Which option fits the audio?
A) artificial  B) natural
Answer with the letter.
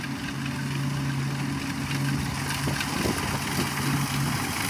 B